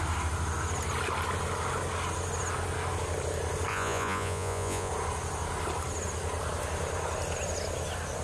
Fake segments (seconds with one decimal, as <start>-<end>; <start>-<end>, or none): 3.7-4.9